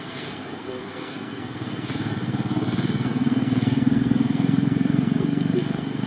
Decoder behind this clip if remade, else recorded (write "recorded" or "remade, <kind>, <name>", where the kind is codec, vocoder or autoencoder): remade, codec, SNAC